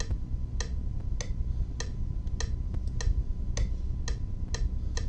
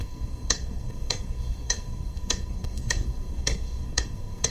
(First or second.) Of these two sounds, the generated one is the second